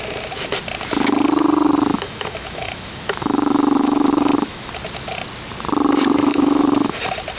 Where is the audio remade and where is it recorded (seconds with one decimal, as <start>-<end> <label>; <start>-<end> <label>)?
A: 0.0-1.9 recorded; 1.9-4.7 remade; 4.7-6.3 recorded; 6.3-7.0 remade; 7.0-7.4 recorded